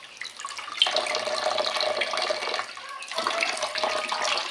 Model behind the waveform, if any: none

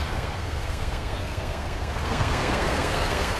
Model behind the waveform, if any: codec, SNAC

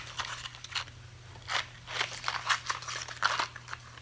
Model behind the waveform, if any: none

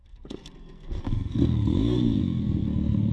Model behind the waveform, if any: codec, SNAC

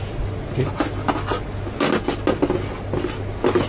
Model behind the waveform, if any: none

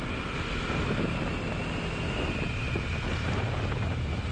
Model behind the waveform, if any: none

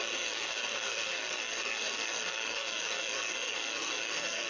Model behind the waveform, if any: codec, SNAC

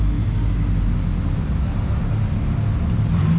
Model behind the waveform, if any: none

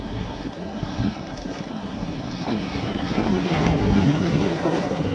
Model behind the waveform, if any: codec, SNAC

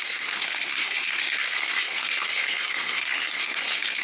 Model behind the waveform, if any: codec, SNAC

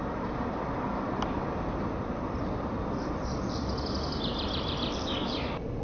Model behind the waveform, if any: none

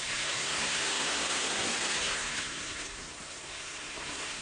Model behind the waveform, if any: codec, SNAC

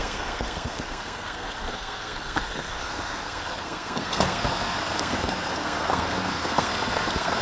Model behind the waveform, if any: codec, SNAC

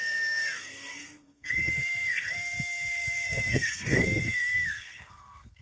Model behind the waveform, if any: codec, SNAC